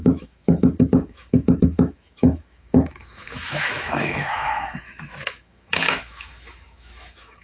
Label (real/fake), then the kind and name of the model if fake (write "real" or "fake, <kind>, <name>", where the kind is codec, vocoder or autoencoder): fake, autoencoder, DAC-VAE